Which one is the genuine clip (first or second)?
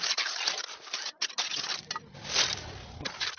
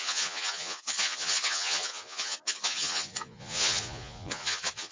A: first